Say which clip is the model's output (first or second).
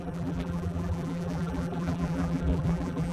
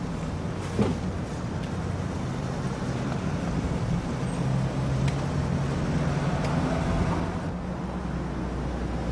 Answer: first